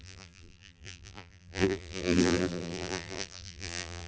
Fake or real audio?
fake